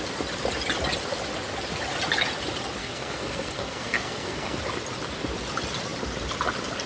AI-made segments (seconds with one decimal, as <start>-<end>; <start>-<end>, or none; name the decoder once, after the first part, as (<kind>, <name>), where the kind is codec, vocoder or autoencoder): 2.8-4.6 (codec, SNAC)